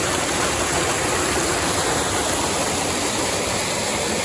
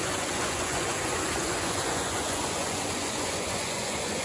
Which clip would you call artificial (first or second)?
second